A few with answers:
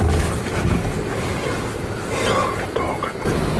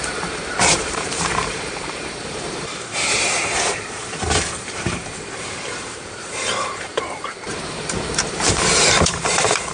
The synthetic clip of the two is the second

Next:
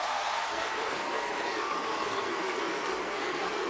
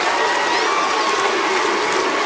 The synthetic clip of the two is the first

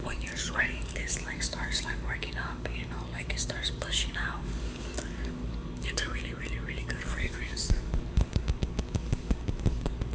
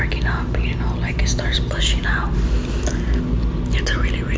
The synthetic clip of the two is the first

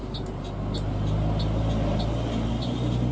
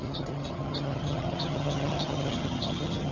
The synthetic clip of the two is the second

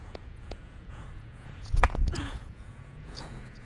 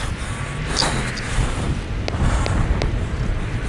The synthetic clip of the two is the first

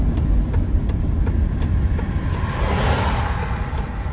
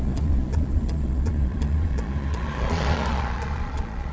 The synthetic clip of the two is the second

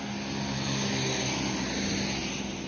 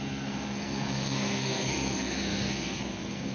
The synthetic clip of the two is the second